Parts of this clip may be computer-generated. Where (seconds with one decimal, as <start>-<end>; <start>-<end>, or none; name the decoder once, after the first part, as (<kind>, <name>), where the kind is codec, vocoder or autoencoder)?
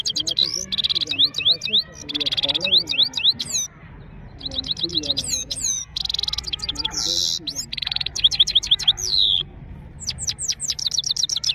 4.9-6.0 (vocoder, Vocos)